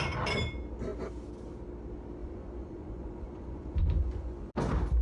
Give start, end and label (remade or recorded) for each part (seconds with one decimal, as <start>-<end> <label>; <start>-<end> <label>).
0.0-2.2 recorded; 2.2-4.5 remade; 4.5-5.0 recorded